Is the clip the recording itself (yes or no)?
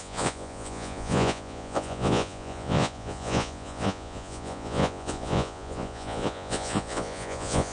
no